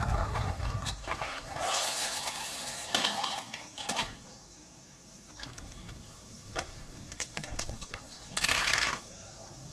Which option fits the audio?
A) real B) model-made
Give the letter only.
B